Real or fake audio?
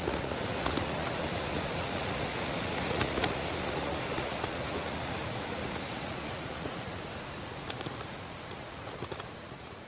fake